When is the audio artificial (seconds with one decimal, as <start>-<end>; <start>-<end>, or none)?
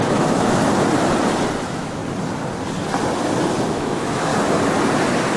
0.0-0.6; 1.6-2.0; 3.7-4.3